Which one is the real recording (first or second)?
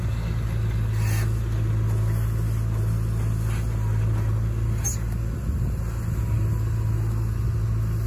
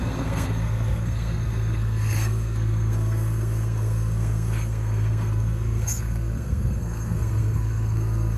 first